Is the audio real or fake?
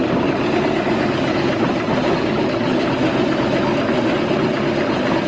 real